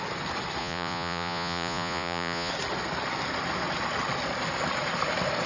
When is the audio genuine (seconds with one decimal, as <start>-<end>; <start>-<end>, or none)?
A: 0.0-0.6; 2.5-5.5